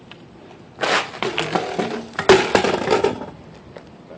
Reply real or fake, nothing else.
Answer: real